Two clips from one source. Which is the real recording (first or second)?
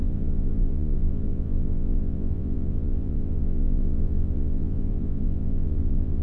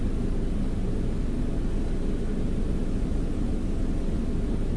second